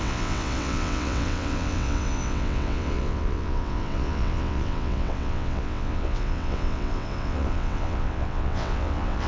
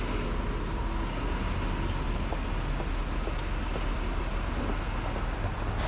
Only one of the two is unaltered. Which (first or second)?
second